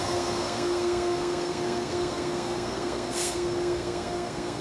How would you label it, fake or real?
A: fake